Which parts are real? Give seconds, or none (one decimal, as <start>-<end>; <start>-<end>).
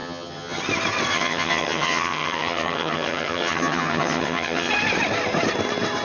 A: 0.6-1.1; 4.7-6.0